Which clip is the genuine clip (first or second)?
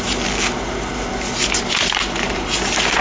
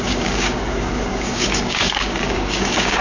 first